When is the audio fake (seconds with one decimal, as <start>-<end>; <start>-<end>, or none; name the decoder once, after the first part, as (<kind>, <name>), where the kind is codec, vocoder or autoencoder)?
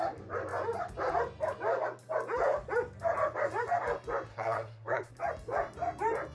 4.3-5.1 (codec, SNAC)